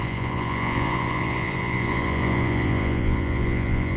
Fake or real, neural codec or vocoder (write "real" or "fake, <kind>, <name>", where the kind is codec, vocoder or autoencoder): fake, vocoder, Vocos